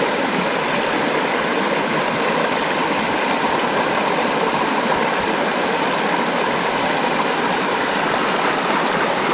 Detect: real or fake real